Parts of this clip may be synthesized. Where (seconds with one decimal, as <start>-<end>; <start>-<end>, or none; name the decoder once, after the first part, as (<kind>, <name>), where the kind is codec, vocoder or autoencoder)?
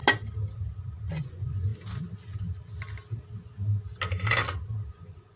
1.1-1.7 (vocoder, Vocos); 4.9-5.4